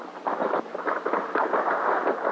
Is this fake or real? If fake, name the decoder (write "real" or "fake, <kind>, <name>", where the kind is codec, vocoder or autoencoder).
fake, vocoder, BigVGAN v2